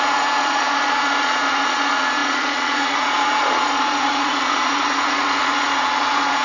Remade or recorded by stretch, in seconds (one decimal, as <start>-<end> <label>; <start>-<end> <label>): 0.0-6.4 remade